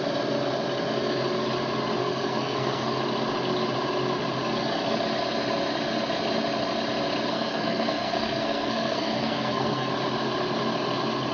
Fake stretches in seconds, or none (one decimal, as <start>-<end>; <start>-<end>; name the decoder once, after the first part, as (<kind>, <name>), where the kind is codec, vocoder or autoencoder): 2.0-3.0 (codec, SNAC); 7.3-9.9